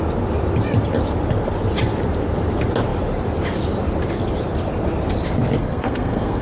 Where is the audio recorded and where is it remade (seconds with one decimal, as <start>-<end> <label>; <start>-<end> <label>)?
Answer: 0.0-5.6 recorded; 5.6-6.4 remade